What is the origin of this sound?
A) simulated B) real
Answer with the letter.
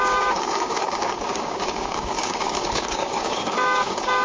A